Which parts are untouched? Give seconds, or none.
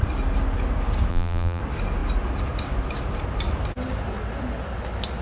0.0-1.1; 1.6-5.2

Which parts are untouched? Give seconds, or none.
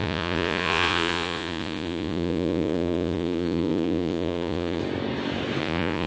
4.8-5.6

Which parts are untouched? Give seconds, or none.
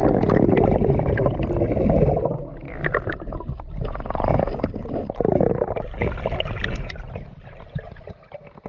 0.0-8.7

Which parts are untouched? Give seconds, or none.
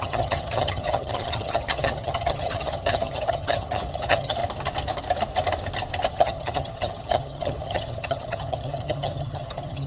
4.4-6.1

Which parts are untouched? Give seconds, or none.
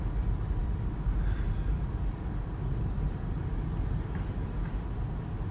0.0-0.6; 3.4-5.5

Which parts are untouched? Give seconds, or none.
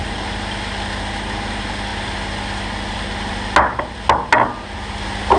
0.0-5.4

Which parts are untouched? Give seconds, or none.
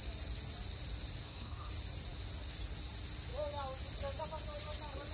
0.0-1.2; 1.7-5.1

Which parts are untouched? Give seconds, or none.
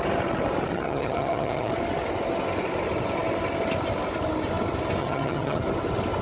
0.0-0.7; 1.7-5.0; 5.6-6.2